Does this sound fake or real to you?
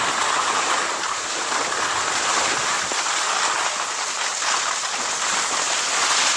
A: real